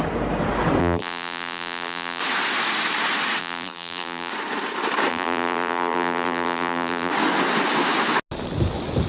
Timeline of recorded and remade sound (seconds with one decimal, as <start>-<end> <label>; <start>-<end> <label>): 0.0-0.8 recorded; 0.8-2.2 remade; 2.2-3.4 recorded; 3.4-4.3 remade; 4.3-5.1 recorded; 5.1-7.1 remade; 7.1-9.1 recorded